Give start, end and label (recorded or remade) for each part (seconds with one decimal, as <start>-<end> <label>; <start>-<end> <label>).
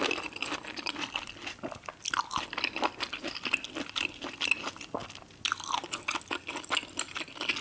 0.0-7.6 recorded